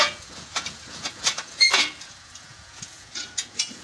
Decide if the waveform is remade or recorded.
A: remade